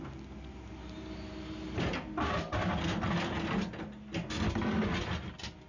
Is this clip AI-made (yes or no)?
no